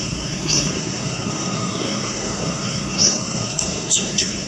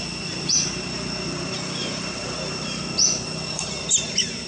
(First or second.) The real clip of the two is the second